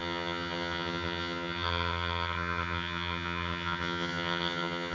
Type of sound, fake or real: fake